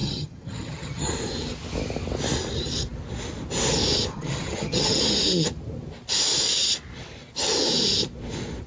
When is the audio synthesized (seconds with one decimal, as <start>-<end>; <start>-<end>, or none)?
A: 0.0-1.1; 4.1-5.0

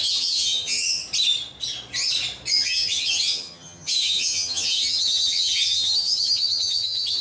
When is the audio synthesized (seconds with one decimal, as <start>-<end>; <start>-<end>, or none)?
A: 0.0-1.0; 2.5-7.2

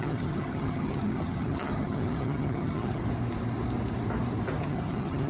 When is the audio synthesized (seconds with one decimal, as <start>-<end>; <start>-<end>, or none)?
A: 0.0-3.0; 4.6-5.3

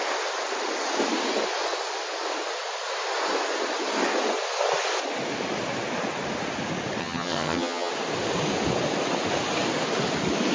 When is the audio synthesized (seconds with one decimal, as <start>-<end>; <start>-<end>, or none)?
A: 7.0-7.9

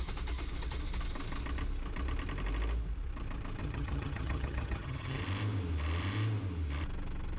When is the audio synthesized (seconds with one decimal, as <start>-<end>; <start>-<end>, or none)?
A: 3.6-5.2

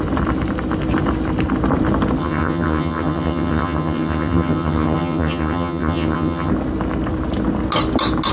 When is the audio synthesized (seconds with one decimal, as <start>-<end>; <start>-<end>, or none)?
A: 2.2-6.5